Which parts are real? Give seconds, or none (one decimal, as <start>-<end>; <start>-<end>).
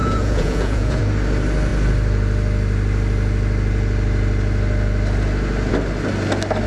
1.0-6.7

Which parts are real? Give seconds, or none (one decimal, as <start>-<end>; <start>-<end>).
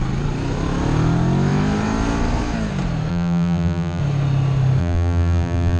0.0-3.1; 4.0-4.8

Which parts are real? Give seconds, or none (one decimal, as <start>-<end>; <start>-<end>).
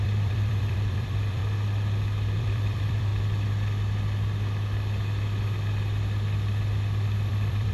1.4-2.4; 3.1-7.3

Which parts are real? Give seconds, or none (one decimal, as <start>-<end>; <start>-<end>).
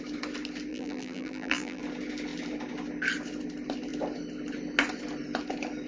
0.0-0.7; 1.8-5.9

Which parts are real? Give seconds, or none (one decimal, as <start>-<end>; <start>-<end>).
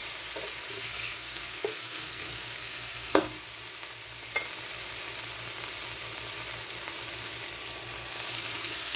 0.0-0.7; 3.3-8.3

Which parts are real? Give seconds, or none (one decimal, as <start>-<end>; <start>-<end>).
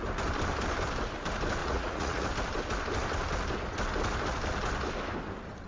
0.0-1.6; 2.3-5.7